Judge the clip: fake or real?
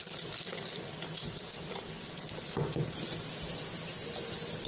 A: real